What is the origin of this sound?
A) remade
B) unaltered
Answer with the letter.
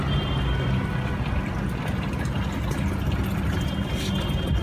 B